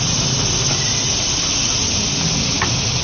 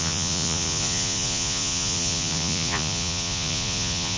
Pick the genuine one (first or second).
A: first